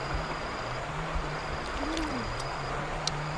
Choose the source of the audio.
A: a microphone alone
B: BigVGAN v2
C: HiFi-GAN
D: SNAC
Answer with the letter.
B